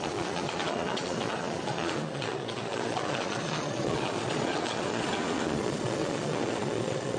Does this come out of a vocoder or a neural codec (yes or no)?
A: yes